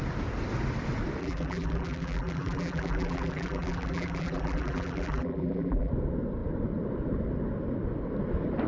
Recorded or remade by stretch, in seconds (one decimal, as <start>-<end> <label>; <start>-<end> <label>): 0.0-1.2 recorded; 1.2-5.9 remade; 5.9-8.7 recorded